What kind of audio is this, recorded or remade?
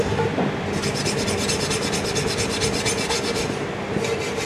recorded